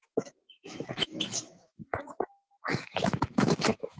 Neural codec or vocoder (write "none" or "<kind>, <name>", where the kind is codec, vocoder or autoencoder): autoencoder, DAC-VAE